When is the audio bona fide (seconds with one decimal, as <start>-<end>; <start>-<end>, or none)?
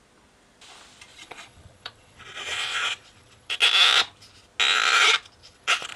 0.0-1.1; 3.6-5.4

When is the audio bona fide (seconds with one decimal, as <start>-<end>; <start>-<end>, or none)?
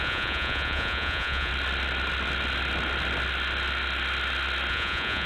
1.5-4.7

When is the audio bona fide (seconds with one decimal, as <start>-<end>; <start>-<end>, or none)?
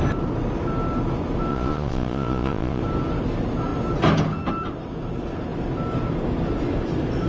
0.0-1.5; 2.8-7.3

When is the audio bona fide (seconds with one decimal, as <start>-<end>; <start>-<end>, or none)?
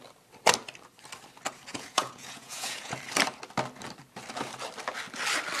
0.0-1.7; 3.0-5.6